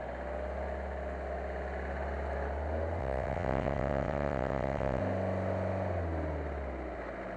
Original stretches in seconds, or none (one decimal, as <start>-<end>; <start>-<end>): 0.0-3.0; 5.0-7.4